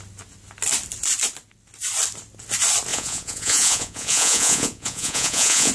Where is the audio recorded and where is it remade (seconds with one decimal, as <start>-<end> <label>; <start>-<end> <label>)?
0.0-2.9 recorded; 2.9-5.7 remade